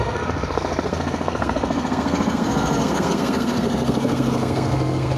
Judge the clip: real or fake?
fake